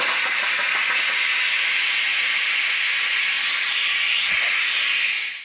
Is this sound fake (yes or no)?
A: no